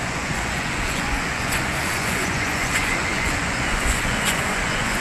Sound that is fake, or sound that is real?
fake